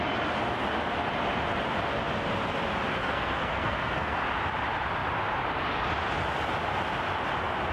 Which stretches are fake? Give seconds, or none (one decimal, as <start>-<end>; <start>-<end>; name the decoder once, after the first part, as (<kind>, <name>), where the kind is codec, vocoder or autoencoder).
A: 3.0-4.2 (codec, SNAC)